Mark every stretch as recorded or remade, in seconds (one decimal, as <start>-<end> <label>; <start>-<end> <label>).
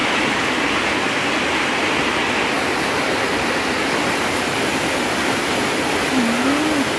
0.0-0.6 remade; 0.6-2.7 recorded; 2.7-5.5 remade; 5.5-7.0 recorded